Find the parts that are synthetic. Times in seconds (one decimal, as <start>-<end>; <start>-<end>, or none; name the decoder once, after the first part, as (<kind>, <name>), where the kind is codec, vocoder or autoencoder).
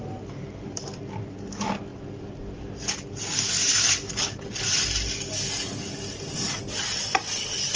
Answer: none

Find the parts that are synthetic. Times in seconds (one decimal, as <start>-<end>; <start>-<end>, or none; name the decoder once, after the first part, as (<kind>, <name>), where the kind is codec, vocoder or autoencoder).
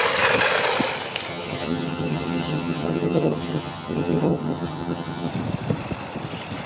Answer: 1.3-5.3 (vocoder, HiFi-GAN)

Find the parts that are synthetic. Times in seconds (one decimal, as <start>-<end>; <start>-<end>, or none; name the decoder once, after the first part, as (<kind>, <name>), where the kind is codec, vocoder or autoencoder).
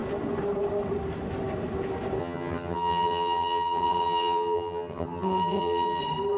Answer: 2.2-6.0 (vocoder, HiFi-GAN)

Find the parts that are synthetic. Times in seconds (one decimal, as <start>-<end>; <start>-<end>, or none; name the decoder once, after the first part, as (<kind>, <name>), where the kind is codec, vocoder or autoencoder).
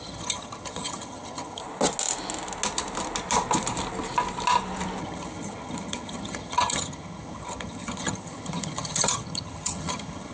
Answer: 0.0-1.6 (vocoder, HiFi-GAN); 5.0-10.3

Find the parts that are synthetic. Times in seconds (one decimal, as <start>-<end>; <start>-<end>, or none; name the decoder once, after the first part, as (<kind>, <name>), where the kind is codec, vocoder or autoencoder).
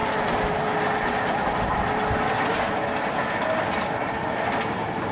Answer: none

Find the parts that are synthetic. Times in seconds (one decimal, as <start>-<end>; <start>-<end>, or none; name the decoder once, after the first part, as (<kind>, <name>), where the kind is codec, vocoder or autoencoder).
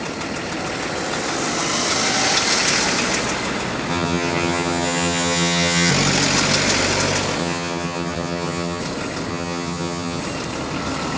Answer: 3.9-5.9 (vocoder, HiFi-GAN); 7.4-8.8; 9.3-10.2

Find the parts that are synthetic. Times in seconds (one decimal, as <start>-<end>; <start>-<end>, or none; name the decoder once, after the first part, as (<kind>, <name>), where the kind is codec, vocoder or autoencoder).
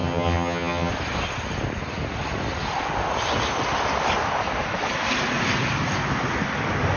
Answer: 0.0-0.9 (vocoder, HiFi-GAN)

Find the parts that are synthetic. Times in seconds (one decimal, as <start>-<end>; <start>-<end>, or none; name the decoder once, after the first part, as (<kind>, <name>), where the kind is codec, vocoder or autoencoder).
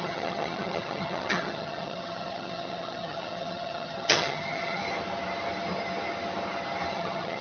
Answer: 0.0-4.8 (vocoder, HiFi-GAN); 6.9-7.4